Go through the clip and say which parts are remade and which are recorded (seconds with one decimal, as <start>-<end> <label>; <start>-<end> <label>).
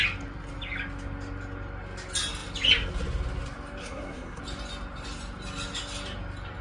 0.0-3.8 recorded; 3.8-4.4 remade; 4.4-6.6 recorded